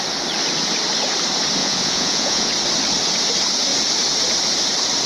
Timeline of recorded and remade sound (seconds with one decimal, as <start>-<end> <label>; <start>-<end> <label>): 0.0-1.6 recorded; 1.6-2.5 remade; 2.5-5.1 recorded